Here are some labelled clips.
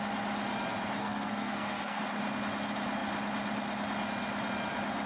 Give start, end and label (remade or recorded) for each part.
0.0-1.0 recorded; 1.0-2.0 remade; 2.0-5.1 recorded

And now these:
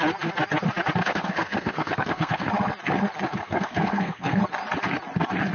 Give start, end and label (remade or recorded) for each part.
0.0-1.0 recorded; 1.0-2.5 remade; 2.5-3.4 recorded; 3.4-4.4 remade; 4.4-5.5 recorded

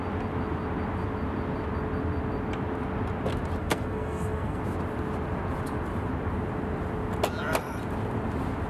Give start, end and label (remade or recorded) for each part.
0.0-3.6 recorded; 3.6-4.6 remade; 4.6-8.7 recorded

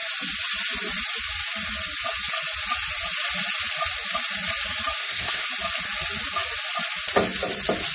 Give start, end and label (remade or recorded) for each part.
0.0-5.0 recorded; 5.0-5.5 remade; 5.5-7.9 recorded

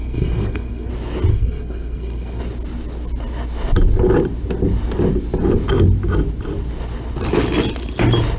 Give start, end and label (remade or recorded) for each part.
0.0-0.9 remade; 0.9-1.3 recorded; 1.3-2.4 remade; 2.4-8.4 recorded

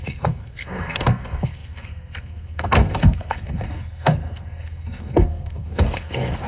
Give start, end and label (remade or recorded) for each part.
0.0-6.5 remade

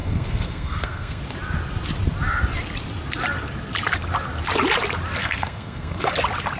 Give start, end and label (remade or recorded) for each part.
0.0-1.2 remade; 1.2-5.2 recorded; 5.2-6.1 remade; 6.1-6.6 recorded